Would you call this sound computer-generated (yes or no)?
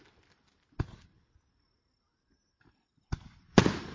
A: no